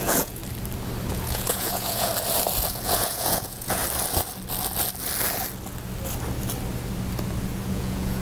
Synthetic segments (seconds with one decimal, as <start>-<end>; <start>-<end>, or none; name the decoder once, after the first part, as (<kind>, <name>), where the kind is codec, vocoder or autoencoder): 0.0-0.4 (vocoder, Vocos); 1.1-2.1; 2.7-3.8; 7.7-8.2